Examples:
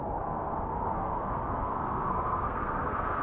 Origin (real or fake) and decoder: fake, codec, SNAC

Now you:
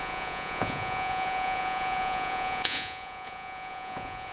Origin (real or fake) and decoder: fake, vocoder, Vocos